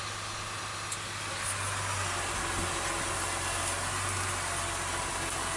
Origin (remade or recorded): recorded